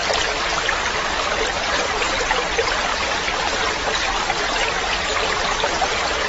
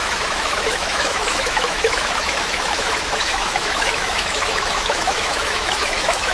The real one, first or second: first